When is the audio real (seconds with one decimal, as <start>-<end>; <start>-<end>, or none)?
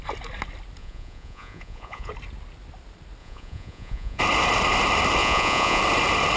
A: 0.0-0.8; 2.1-3.2; 4.2-5.2; 5.8-6.4